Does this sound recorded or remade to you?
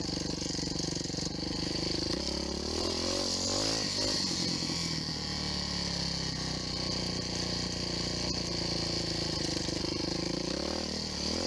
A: recorded